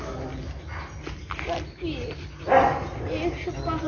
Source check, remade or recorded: recorded